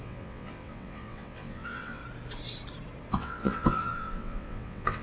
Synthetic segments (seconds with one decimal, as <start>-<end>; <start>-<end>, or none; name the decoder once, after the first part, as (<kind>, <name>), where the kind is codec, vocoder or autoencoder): 0.0-2.0 (vocoder, WaveNeXt); 3.1-5.0